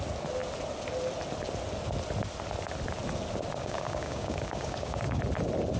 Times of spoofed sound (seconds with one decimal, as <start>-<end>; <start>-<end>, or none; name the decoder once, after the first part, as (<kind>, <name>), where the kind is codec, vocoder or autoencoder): 3.6-5.2 (codec, DAC)